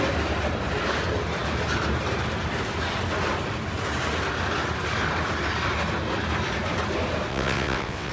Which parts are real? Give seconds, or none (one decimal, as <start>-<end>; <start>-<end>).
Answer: 0.0-7.3